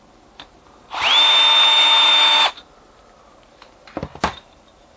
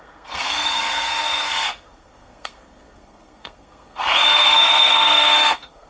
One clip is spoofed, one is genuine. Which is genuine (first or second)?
first